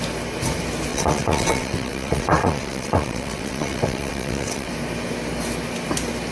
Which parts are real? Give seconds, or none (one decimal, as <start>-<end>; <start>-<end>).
0.0-0.9; 4.7-6.3